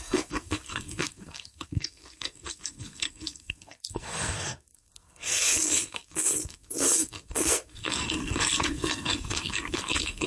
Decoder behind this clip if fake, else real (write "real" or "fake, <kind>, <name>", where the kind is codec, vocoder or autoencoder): fake, codec, SNAC